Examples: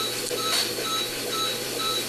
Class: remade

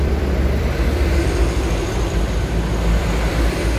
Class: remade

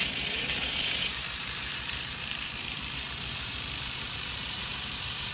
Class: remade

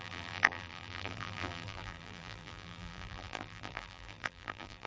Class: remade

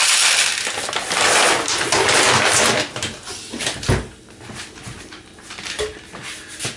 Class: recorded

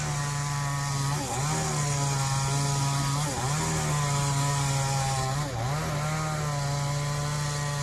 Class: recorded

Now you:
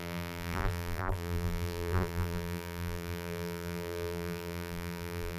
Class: remade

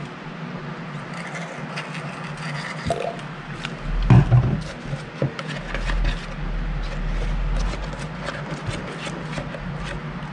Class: recorded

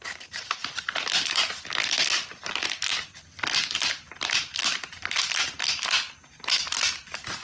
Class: remade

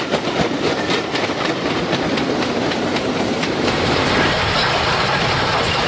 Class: remade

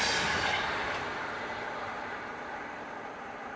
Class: remade